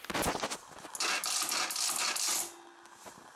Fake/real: real